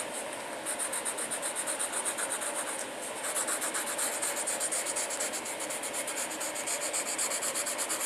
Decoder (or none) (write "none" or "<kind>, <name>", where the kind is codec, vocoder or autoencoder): none